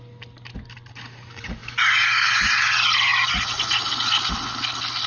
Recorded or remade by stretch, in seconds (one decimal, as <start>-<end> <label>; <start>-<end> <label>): 0.0-5.1 recorded